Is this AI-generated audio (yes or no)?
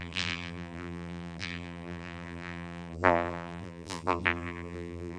yes